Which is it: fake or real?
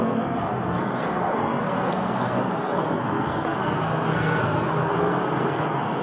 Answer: fake